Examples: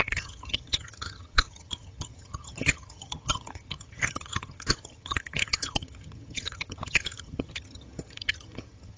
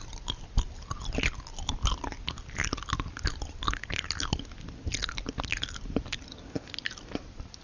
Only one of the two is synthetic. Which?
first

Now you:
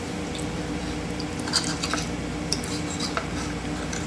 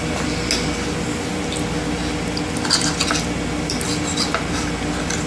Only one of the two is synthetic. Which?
first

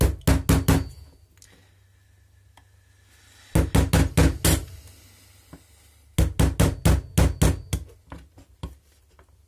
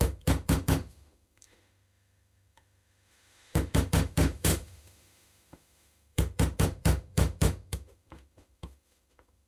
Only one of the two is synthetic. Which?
second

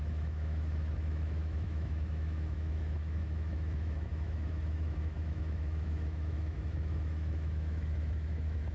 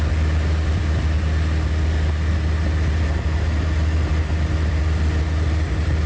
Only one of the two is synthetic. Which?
first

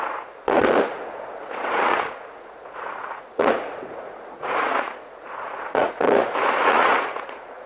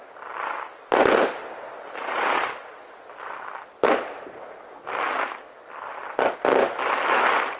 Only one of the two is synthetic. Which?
first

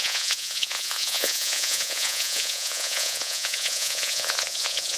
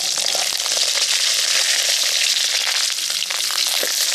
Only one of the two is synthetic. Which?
first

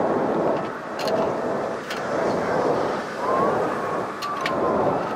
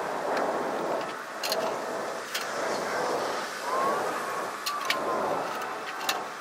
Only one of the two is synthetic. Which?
first